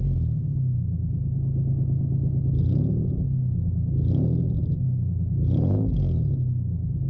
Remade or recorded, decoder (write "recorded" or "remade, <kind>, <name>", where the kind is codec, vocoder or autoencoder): recorded